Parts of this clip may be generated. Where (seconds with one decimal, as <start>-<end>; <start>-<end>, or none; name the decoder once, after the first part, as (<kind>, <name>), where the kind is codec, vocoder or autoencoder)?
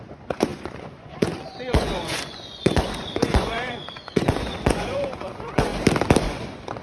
0.0-5.7 (vocoder, Vocos); 6.2-6.8